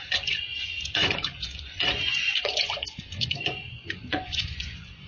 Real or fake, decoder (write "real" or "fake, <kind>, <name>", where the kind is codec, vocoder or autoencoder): fake, vocoder, Vocos